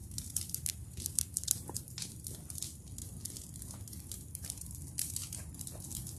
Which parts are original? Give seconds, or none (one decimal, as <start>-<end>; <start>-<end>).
2.2-6.2